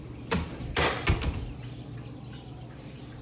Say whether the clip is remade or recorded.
recorded